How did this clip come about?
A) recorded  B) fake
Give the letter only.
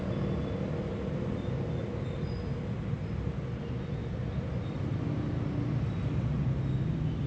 A